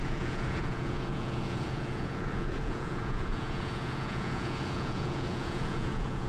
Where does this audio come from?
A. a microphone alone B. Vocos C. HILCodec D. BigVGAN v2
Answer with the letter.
B